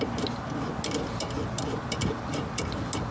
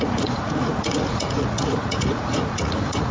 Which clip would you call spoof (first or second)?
second